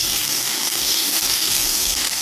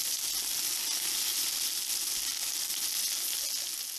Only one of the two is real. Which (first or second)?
second